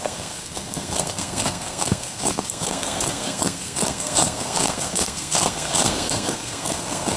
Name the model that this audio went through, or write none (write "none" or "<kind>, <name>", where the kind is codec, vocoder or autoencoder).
codec, SNAC